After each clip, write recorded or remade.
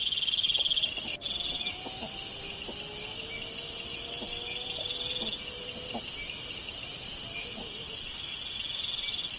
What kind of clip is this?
recorded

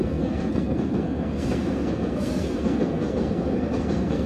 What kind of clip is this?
remade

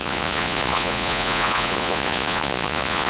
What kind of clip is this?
remade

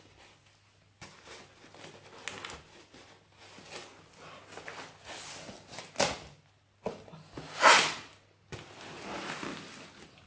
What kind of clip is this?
recorded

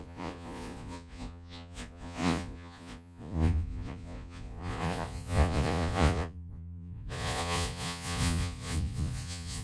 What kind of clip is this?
remade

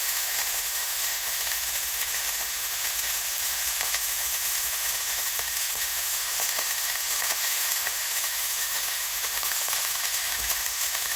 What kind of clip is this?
remade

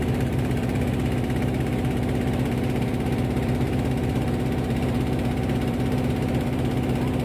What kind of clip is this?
remade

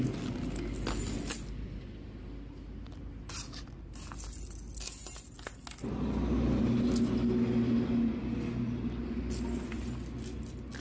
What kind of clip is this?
recorded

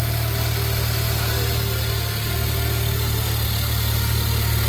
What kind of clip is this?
recorded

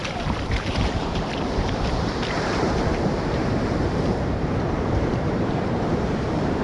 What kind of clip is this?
remade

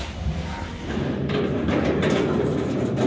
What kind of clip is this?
recorded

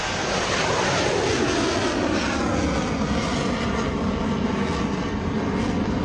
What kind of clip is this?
recorded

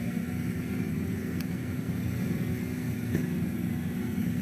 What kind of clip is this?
remade